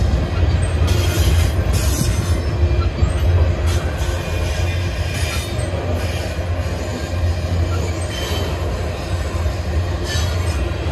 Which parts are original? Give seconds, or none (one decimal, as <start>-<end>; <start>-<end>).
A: 0.0-10.9